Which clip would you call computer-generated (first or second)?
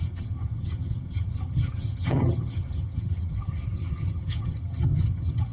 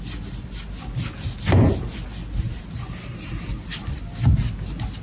first